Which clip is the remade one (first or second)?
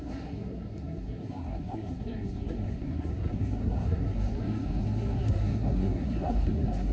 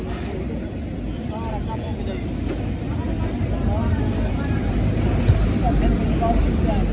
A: first